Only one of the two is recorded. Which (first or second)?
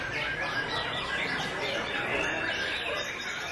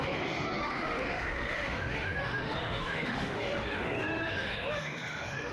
first